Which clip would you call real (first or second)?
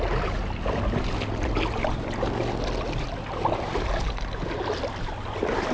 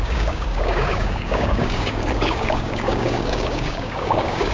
first